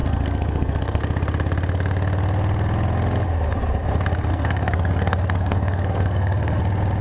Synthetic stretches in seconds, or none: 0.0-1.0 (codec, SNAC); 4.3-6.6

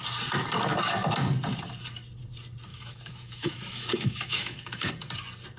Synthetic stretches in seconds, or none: 2.7-4.9 (autoencoder, DAC-VAE)

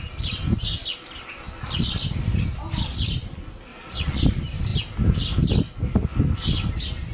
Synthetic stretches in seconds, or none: 3.7-4.2 (vocoder, Vocos)